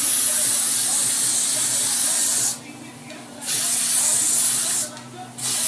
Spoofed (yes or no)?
no